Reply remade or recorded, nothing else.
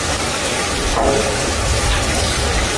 remade